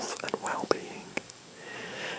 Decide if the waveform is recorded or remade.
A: remade